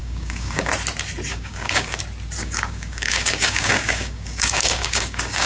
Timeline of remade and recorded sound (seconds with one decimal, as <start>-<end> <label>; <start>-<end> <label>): 0.0-0.7 remade; 0.7-1.3 recorded; 1.3-2.0 remade; 2.0-2.4 recorded; 2.4-5.5 remade